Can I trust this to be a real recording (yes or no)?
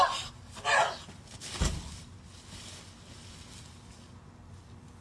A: yes